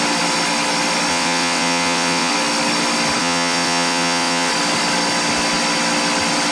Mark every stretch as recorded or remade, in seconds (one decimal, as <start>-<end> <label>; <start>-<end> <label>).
0.0-1.1 recorded; 1.1-2.3 remade; 2.3-3.2 recorded; 3.2-4.5 remade; 4.5-6.5 recorded